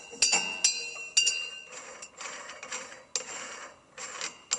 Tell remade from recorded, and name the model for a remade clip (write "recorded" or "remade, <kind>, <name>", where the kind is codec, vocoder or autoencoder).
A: recorded